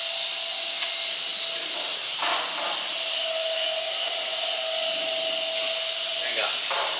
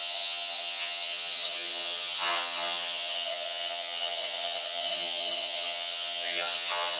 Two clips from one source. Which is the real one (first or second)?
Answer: first